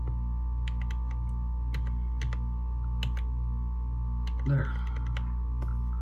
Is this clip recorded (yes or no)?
yes